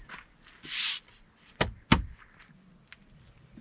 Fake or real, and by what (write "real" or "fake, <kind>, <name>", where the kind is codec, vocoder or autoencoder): real